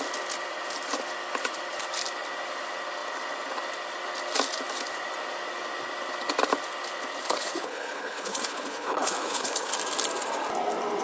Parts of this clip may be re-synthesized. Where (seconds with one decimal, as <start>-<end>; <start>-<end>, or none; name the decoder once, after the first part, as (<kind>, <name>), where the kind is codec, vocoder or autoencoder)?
7.2-9.7 (codec, HILCodec)